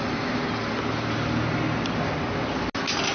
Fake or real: real